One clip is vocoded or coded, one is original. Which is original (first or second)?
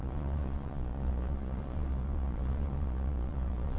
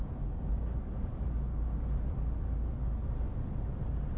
second